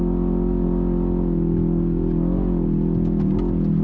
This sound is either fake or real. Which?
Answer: real